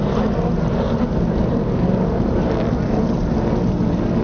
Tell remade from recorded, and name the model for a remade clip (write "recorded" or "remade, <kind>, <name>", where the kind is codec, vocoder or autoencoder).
recorded